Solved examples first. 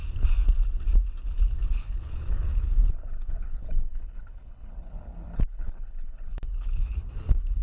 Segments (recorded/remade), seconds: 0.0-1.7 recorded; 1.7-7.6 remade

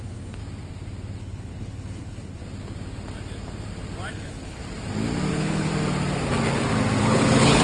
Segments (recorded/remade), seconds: 0.0-0.4 remade; 0.4-1.2 recorded; 1.2-2.4 remade; 2.4-4.1 recorded; 4.1-4.6 remade; 4.6-5.3 recorded; 5.3-5.7 remade; 5.7-7.0 recorded; 7.0-7.6 remade

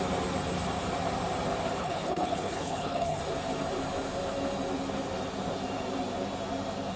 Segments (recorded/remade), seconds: 0.0-1.8 recorded; 1.8-3.2 remade; 3.2-7.0 recorded

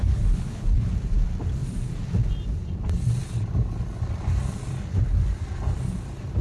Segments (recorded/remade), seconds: 0.0-0.9 remade; 0.9-6.4 recorded

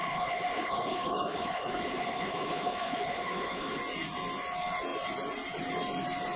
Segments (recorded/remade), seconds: 0.0-3.8 remade; 3.8-6.4 recorded

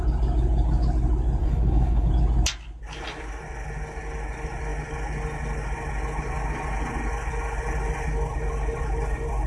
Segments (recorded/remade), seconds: 0.0-1.4 recorded; 1.4-2.1 remade; 2.1-9.5 recorded

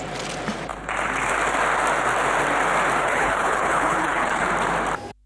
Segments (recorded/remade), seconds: 0.0-3.0 recorded; 3.0-4.5 remade; 4.5-5.3 recorded

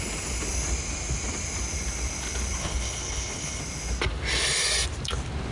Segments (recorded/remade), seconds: 0.0-2.6 recorded; 2.6-3.6 remade; 3.6-5.5 recorded